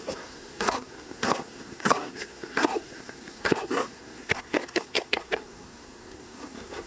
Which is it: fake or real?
fake